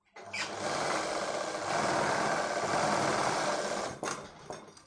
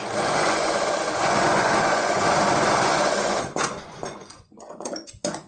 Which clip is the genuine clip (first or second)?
first